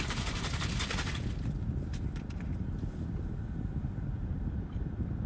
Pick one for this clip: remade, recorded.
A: remade